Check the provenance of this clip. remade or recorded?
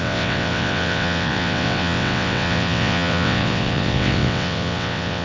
remade